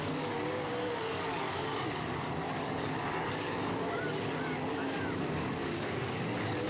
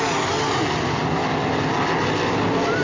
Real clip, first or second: second